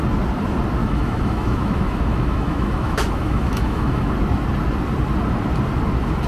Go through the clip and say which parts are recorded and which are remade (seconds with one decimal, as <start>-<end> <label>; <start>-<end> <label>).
0.0-0.8 recorded; 0.8-4.1 remade; 4.1-6.3 recorded